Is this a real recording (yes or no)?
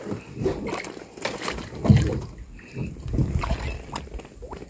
yes